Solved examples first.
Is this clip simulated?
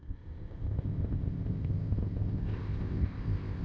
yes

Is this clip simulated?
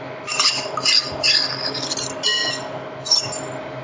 no